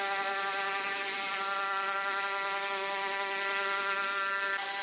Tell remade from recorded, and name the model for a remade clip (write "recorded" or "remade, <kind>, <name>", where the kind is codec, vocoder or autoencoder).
recorded